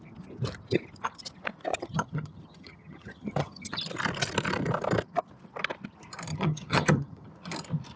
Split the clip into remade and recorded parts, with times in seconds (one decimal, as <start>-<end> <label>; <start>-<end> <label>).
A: 0.0-1.7 recorded; 1.7-3.8 remade; 3.8-6.3 recorded; 6.3-7.3 remade; 7.3-8.0 recorded